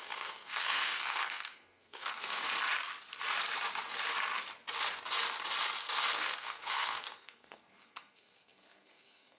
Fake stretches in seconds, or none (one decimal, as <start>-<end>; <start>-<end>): 0.0-2.4; 6.1-9.4